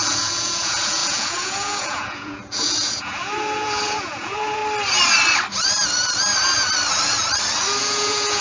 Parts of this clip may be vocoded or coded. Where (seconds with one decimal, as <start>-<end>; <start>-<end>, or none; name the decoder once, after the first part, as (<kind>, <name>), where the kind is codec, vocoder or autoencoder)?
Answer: 0.0-4.6 (vocoder, Vocos); 7.8-8.4